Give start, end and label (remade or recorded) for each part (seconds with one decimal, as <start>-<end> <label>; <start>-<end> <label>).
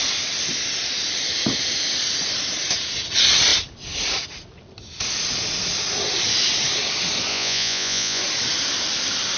0.0-7.3 recorded; 7.3-8.2 remade; 8.2-9.4 recorded